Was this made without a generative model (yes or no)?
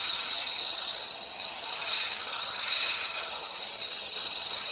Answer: no